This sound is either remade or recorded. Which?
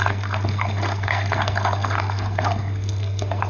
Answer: remade